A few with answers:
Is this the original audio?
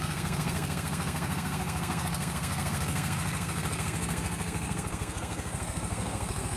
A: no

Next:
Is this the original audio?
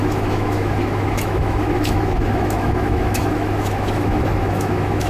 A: no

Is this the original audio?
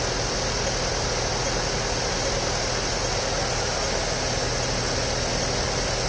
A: yes